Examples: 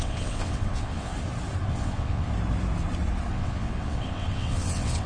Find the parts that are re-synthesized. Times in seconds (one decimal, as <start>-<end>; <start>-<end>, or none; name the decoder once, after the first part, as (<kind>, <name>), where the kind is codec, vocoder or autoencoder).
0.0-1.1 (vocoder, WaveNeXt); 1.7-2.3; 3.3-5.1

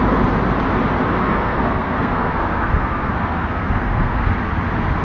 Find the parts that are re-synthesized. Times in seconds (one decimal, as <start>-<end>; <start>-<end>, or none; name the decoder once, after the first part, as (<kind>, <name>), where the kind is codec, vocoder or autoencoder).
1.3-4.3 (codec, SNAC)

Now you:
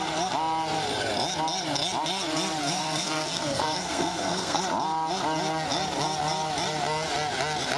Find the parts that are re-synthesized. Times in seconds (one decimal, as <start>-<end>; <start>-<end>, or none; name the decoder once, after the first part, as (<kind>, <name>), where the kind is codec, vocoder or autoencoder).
2.6-4.6 (codec, SNAC)

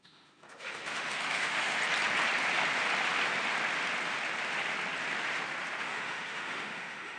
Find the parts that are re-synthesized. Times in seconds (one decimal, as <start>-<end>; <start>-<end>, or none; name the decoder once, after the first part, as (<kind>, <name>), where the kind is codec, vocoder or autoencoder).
0.0-1.8 (autoencoder, DAC-VAE); 5.8-7.2